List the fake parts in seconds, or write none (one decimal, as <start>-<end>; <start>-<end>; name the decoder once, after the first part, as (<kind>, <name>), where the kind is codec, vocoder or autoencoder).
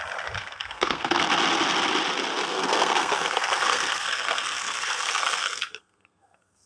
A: 0.4-1.2 (codec, SNAC); 2.4-6.7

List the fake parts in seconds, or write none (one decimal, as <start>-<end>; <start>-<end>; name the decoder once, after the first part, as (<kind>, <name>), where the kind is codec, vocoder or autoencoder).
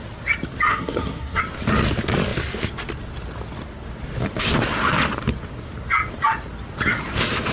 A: 0.7-1.4 (codec, SNAC)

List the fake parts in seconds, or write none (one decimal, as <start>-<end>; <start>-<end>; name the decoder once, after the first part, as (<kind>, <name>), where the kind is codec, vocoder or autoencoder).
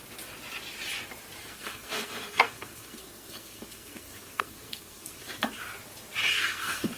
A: 1.4-5.6 (codec, SNAC); 6.3-7.0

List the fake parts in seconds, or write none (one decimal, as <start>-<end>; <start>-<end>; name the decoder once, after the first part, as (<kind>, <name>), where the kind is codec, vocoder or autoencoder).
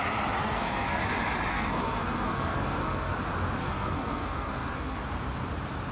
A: 0.4-1.0 (codec, SNAC); 1.5-3.1; 3.6-5.0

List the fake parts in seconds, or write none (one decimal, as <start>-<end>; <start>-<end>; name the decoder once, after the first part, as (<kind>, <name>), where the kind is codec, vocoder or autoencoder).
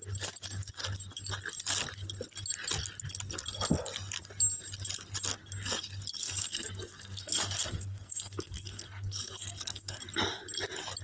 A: 6.2-10.0 (codec, SNAC)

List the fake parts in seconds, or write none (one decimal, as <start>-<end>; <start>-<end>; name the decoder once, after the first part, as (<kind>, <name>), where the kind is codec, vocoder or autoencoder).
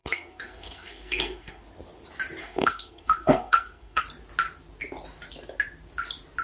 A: 0.0-1.6 (codec, SNAC); 2.4-4.0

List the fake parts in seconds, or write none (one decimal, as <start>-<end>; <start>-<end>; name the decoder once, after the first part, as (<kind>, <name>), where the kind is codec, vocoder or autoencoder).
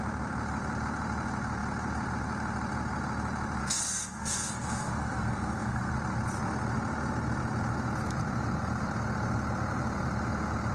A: 3.6-5.9 (codec, SNAC)